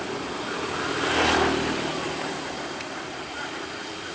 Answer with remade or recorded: remade